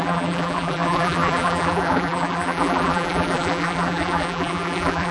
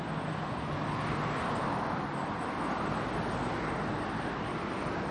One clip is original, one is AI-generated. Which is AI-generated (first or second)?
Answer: first